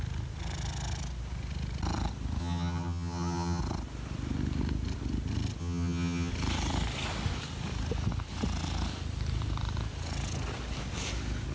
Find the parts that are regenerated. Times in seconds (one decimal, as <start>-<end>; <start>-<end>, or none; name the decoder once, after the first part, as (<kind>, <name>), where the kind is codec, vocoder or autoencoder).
2.4-3.6 (vocoder, HiFi-GAN); 5.6-6.3